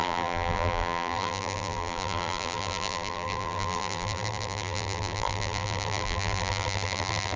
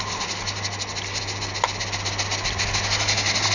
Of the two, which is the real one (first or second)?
second